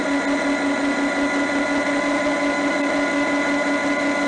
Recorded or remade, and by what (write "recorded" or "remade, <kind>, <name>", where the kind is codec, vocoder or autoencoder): recorded